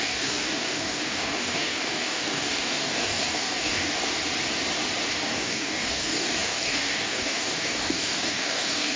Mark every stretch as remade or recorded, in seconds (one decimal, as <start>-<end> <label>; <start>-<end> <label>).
0.0-4.0 remade; 4.0-5.1 recorded; 5.1-9.0 remade